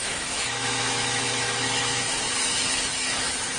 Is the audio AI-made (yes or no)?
yes